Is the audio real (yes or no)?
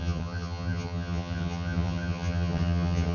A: no